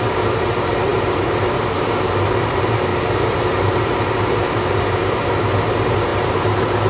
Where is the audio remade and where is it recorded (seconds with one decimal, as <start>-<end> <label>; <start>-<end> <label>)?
0.0-2.9 remade; 2.9-3.5 recorded; 3.5-6.9 remade